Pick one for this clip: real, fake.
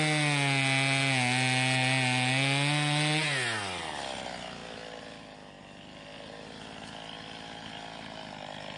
real